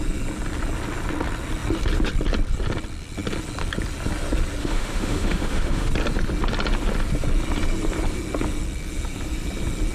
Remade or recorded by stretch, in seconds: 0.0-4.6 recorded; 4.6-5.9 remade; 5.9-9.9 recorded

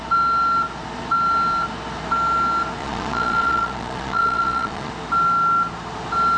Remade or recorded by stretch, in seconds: 0.0-2.8 recorded; 2.8-4.9 remade; 4.9-6.4 recorded

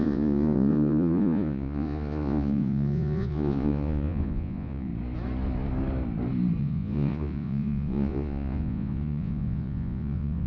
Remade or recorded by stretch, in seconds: 0.0-4.9 remade; 4.9-6.6 recorded; 6.6-10.5 remade

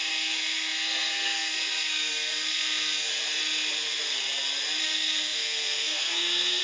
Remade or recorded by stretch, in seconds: 0.0-3.1 remade; 3.1-4.8 recorded; 4.8-6.6 remade

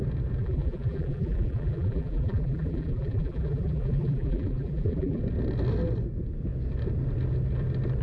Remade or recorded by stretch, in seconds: 0.0-0.4 recorded; 0.4-5.2 remade; 5.2-8.0 recorded

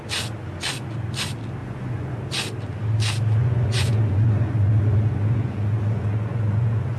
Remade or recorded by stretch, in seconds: 0.0-1.6 recorded; 1.6-2.2 remade; 2.2-3.4 recorded; 3.4-7.0 remade

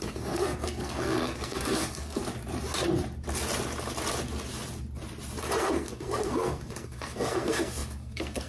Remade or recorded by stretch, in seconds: 0.0-2.2 remade; 2.2-5.4 recorded; 5.4-8.5 remade